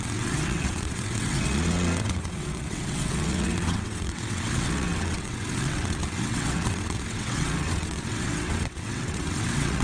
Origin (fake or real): fake